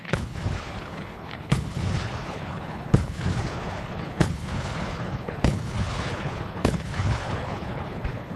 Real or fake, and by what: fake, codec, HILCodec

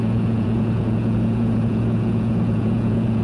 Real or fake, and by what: fake, vocoder, Vocos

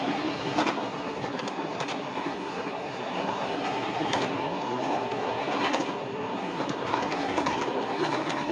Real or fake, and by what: fake, codec, SNAC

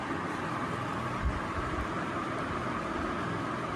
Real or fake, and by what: real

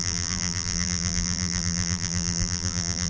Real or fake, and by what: fake, vocoder, BigVGAN v2